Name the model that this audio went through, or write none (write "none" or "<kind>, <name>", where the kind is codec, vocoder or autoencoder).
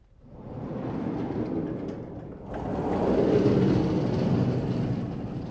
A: none